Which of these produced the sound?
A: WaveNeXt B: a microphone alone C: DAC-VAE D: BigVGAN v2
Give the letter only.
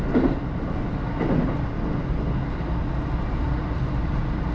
B